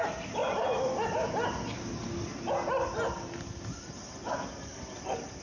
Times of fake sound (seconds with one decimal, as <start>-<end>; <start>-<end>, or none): none